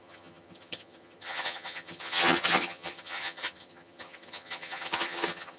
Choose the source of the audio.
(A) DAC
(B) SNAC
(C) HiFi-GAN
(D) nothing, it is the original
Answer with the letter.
C